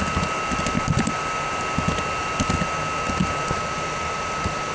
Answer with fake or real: real